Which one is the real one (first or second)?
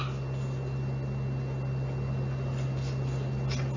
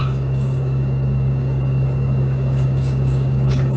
first